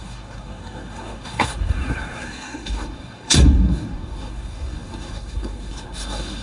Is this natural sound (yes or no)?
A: no